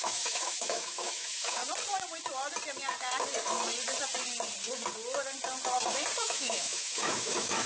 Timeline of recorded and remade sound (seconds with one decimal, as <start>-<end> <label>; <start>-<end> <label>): 0.0-1.6 remade; 1.6-6.2 recorded; 6.2-7.7 remade